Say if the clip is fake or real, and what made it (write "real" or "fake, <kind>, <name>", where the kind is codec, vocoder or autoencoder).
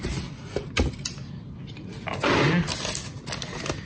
real